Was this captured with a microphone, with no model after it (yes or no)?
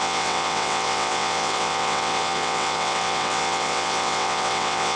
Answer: no